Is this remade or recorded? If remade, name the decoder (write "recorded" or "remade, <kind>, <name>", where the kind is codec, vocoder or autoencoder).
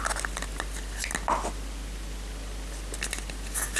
recorded